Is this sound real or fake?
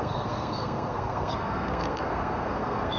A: fake